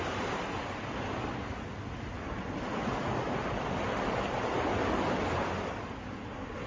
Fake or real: real